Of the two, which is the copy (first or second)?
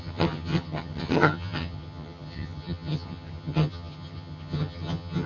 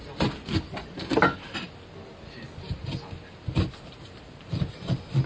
first